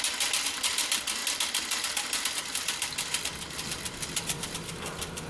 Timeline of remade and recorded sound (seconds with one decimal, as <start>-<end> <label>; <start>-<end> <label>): 0.0-5.3 recorded